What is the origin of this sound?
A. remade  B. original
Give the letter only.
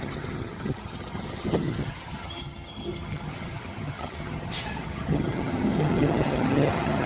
A